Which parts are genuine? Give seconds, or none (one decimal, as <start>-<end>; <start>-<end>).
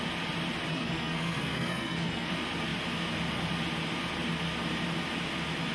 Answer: 0.0-0.7; 2.3-5.7